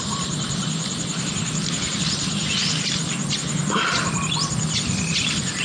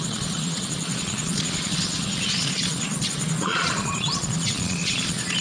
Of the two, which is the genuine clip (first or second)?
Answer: first